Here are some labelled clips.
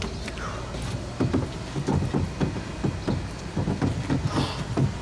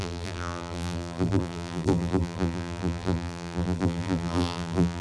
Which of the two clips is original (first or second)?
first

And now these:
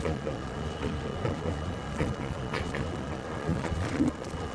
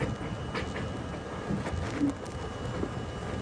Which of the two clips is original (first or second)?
second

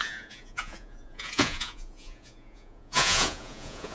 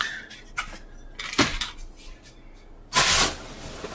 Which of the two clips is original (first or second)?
second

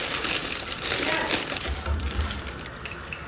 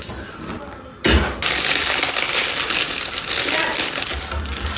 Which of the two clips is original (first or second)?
second